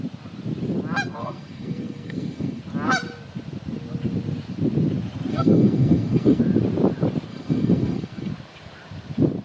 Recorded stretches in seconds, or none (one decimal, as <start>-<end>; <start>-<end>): 0.0-1.2; 2.6-5.3; 6.4-7.3; 8.3-9.4